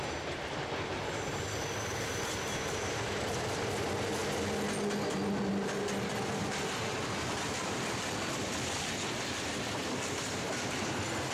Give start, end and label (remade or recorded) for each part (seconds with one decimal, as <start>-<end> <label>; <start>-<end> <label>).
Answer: 0.0-11.3 recorded